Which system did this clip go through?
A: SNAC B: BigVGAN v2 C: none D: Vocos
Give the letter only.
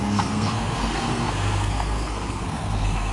A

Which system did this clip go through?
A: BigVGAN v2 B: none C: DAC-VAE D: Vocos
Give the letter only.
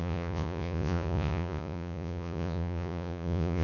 D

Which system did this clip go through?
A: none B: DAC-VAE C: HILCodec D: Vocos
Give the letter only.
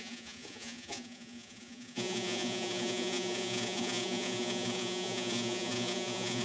D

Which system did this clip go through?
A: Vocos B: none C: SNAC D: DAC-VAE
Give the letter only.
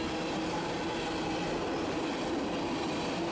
B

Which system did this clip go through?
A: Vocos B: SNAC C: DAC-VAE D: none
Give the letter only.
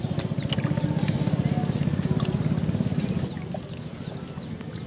D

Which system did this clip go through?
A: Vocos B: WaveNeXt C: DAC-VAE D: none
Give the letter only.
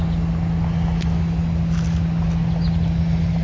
D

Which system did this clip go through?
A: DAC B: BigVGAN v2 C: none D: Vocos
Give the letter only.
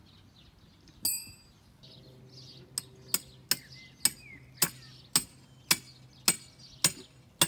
C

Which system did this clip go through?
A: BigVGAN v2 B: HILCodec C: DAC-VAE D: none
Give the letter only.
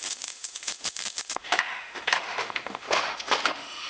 C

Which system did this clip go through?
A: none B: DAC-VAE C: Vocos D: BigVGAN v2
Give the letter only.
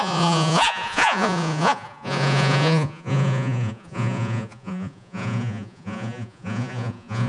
C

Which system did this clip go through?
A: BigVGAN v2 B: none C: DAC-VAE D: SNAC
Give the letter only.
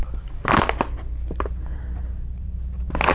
B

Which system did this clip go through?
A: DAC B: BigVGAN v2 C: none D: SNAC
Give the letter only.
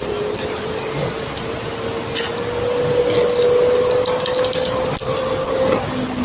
C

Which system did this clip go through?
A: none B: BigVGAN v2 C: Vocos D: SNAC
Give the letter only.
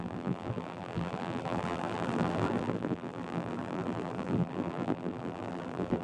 B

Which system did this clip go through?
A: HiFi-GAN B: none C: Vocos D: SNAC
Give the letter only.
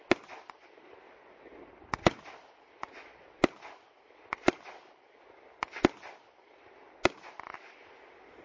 B